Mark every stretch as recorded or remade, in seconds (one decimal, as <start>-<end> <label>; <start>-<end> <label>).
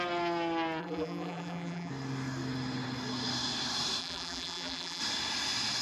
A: 0.0-0.8 recorded; 0.8-1.9 remade; 1.9-4.0 recorded; 4.0-5.0 remade; 5.0-5.8 recorded